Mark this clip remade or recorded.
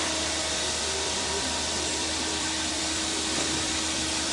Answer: remade